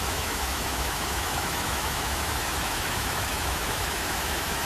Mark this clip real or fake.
fake